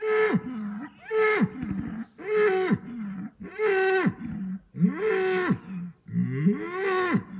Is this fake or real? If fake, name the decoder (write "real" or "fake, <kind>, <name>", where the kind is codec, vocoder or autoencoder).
real